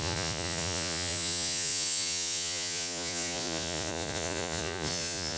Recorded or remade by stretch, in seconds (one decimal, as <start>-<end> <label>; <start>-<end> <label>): 0.0-5.4 remade